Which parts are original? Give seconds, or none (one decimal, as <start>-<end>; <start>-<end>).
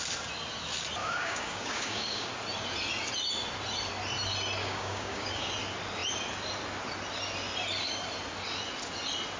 0.0-1.0; 2.3-4.6; 5.5-9.4